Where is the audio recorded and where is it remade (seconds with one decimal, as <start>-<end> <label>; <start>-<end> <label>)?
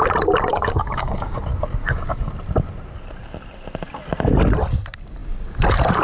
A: 0.0-0.5 recorded; 0.5-1.4 remade; 1.4-1.8 recorded; 1.8-2.3 remade; 2.3-6.0 recorded